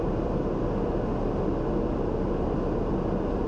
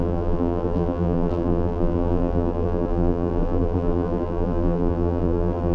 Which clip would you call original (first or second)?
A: first